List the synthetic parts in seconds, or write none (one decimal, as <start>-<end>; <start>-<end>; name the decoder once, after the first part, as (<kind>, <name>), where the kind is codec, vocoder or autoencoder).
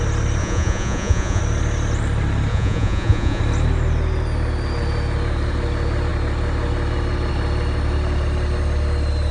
0.4-1.4 (vocoder, Vocos); 2.5-3.4